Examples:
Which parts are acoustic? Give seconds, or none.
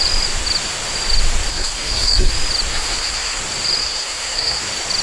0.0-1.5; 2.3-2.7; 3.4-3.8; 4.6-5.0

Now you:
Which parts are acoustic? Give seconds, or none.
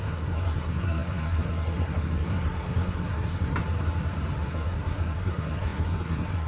3.6-4.5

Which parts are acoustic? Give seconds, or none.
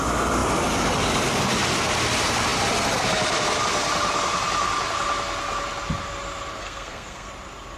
0.0-6.6; 7.3-7.8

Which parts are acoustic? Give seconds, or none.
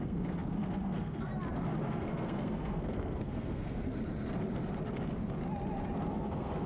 1.3-1.9; 3.9-6.1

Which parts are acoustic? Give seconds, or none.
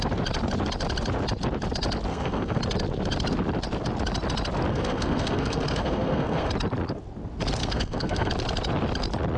0.0-2.1; 2.6-4.7; 6.5-7.6; 8.3-9.4